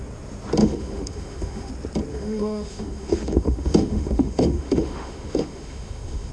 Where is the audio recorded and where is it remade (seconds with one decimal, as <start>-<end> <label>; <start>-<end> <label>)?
0.0-0.6 recorded; 0.6-1.7 remade; 1.7-2.1 recorded; 2.1-6.3 remade